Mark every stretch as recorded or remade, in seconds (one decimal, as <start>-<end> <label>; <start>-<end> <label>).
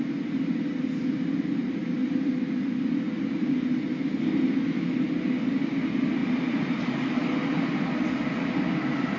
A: 0.0-1.6 recorded; 1.6-2.3 remade; 2.3-6.2 recorded; 6.2-7.3 remade; 7.3-9.2 recorded